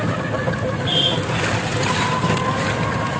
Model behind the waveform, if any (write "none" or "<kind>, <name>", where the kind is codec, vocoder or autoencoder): none